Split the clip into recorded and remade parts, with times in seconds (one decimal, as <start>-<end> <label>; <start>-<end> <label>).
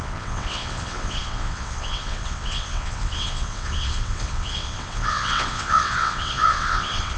0.0-7.2 remade